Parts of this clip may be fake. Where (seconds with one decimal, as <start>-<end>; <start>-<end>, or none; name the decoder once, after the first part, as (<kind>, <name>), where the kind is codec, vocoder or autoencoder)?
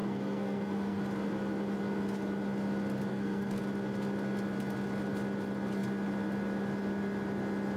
0.0-1.0 (codec, SNAC); 3.1-3.6